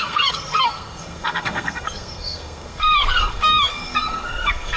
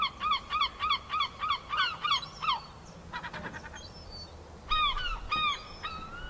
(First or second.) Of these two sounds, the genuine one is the second